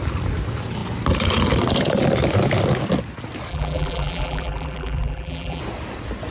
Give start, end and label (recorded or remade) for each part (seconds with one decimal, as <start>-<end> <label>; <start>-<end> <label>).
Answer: 0.0-3.5 recorded; 3.5-5.6 remade; 5.6-6.3 recorded